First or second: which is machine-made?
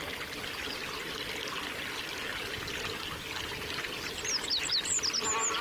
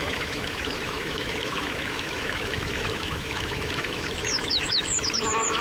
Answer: second